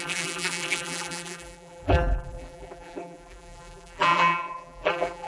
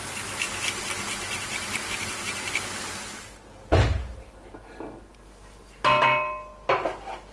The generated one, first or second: first